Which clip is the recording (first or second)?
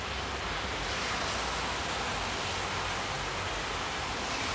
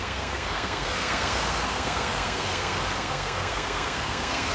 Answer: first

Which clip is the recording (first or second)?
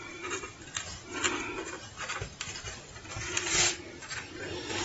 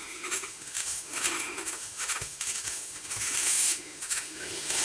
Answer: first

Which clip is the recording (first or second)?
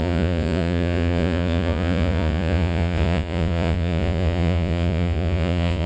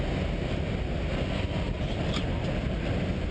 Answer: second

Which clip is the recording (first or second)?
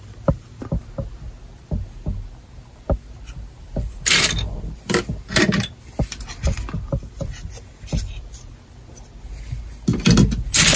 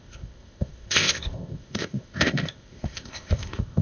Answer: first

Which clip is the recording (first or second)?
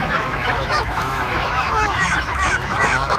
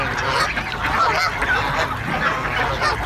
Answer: second